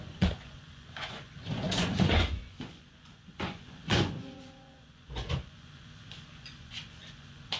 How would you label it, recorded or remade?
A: remade